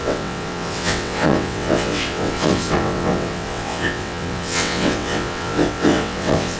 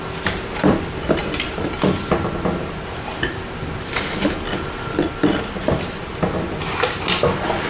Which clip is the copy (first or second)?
first